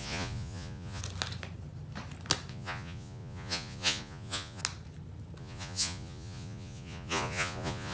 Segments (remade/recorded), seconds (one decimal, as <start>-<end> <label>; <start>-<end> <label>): 0.0-1.0 remade; 1.0-2.5 recorded; 2.5-4.6 remade; 4.6-5.4 recorded; 5.4-7.9 remade